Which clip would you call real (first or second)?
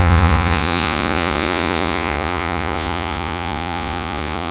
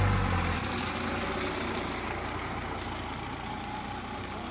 second